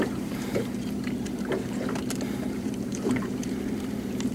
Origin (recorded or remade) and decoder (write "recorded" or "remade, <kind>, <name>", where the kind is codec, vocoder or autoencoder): remade, vocoder, BigVGAN v2